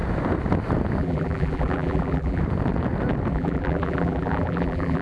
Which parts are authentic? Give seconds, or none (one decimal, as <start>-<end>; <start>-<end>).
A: 0.0-1.0; 2.4-3.3